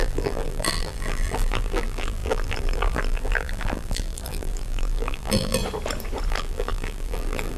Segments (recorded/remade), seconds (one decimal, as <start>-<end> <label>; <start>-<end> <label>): 0.0-5.6 remade; 5.6-6.3 recorded; 6.3-7.6 remade